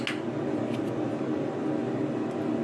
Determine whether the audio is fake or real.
real